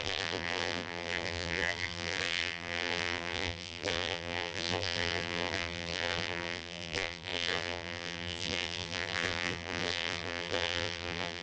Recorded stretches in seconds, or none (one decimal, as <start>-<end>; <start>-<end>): none